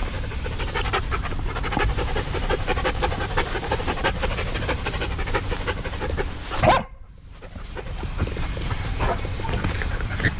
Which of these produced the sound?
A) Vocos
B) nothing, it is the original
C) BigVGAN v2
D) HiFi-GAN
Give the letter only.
C